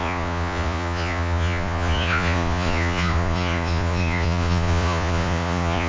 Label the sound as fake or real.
fake